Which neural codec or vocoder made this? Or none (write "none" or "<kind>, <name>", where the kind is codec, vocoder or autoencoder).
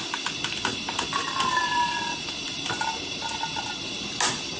none